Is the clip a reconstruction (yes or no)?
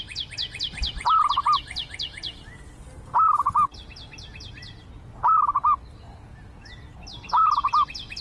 no